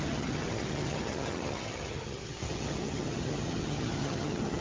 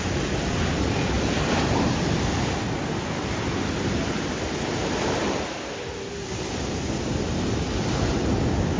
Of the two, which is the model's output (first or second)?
first